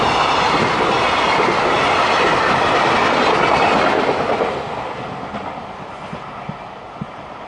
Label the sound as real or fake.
real